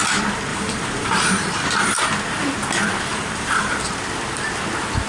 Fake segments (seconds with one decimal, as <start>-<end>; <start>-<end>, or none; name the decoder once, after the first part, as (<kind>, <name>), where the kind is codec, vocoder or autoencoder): 0.5-2.0 (vocoder, BigVGAN v2); 3.1-3.7